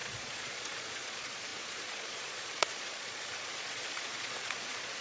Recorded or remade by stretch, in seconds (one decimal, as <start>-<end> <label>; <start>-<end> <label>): 0.0-5.0 remade